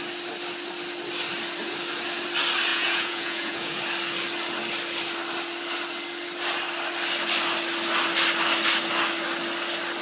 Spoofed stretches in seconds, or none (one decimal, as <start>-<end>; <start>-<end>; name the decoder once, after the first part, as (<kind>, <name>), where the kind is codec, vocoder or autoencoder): 2.7-3.8 (vocoder, Vocos)